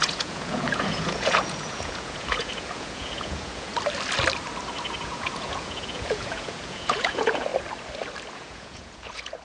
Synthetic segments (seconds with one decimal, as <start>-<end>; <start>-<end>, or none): 0.0-3.7; 5.0-7.5; 8.3-9.4